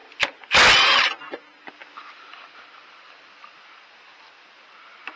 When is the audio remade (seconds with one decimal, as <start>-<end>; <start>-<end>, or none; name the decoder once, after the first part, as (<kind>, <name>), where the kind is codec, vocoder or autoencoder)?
none

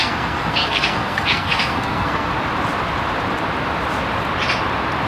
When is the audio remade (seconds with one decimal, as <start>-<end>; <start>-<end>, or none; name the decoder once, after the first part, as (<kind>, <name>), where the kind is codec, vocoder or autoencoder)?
0.0-2.3 (codec, SNAC)